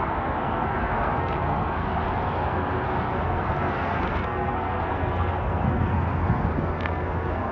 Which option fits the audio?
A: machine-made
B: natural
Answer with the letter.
A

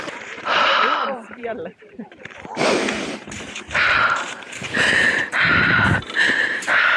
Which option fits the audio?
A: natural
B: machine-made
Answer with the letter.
B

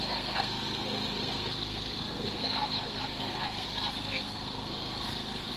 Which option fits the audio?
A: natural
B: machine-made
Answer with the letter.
B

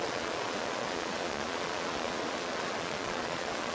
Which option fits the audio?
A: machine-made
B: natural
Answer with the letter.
A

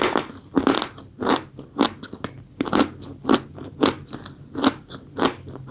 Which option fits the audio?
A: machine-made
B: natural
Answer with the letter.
B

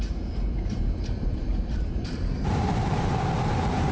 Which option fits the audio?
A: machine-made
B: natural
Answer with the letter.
A